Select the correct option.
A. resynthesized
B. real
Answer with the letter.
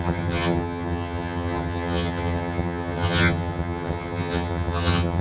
A